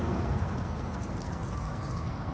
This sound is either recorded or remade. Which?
remade